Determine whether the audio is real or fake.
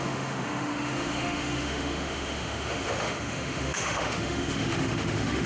fake